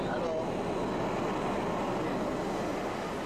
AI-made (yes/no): no